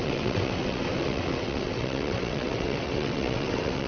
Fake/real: fake